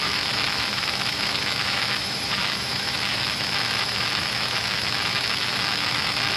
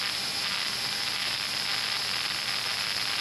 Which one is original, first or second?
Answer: second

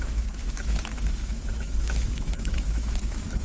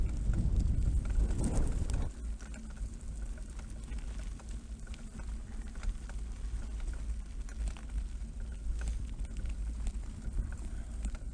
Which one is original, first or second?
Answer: second